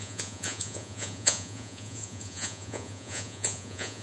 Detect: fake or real fake